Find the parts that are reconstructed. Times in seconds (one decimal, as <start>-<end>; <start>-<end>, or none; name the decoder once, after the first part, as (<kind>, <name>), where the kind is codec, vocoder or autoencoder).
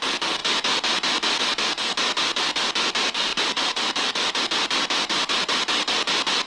3.3-4.4 (vocoder, BigVGAN v2)